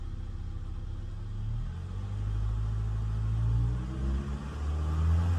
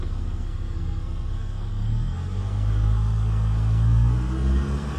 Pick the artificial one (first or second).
second